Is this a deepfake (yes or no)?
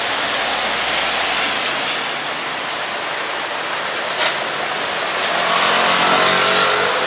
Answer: no